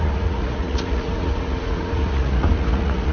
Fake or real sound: fake